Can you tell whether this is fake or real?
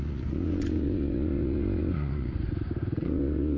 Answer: fake